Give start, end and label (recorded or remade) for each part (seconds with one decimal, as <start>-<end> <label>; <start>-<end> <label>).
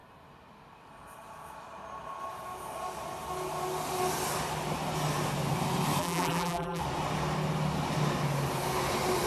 0.0-6.0 recorded; 6.0-6.8 remade; 6.8-9.3 recorded